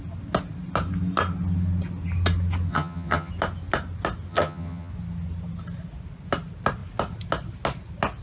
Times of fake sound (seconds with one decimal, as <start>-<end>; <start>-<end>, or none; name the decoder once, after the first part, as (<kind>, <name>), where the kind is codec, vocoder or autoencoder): 2.7-3.3 (vocoder, HiFi-GAN); 4.3-4.9